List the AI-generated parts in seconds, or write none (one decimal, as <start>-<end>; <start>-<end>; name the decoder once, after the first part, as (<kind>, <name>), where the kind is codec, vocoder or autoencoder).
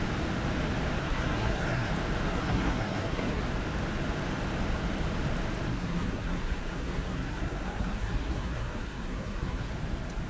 1.0-1.9 (codec, SNAC); 2.3-3.4; 5.7-9.7